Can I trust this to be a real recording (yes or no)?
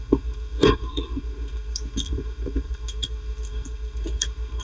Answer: no